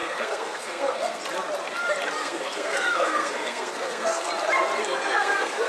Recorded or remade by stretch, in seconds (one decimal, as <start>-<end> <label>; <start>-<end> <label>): 0.0-1.2 remade; 1.2-2.2 recorded; 2.2-4.3 remade; 4.3-4.8 recorded; 4.8-5.7 remade